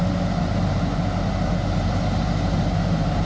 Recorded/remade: recorded